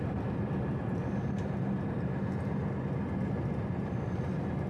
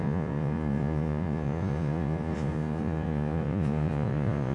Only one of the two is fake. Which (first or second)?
second